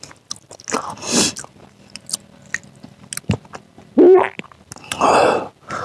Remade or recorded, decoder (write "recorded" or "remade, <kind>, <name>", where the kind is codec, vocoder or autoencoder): recorded